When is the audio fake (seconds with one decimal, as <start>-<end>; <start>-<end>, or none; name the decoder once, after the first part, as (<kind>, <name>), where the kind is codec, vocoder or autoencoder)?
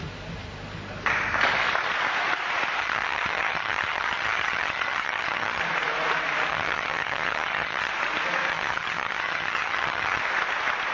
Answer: 2.8-5.6 (vocoder, HiFi-GAN); 6.5-7.9; 8.5-10.2